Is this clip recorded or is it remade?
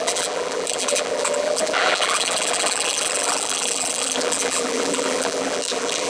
remade